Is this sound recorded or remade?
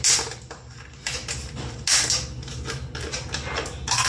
recorded